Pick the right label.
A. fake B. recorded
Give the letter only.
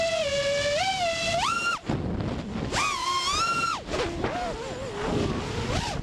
B